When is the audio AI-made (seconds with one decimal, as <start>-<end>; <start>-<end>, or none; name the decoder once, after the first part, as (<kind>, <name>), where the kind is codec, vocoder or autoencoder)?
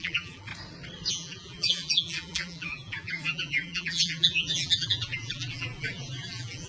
0.0-0.5 (vocoder, BigVGAN v2); 1.1-6.7